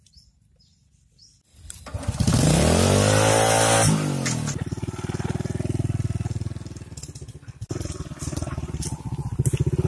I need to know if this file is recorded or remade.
recorded